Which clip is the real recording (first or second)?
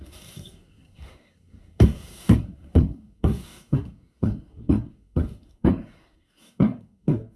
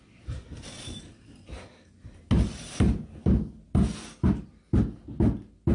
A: second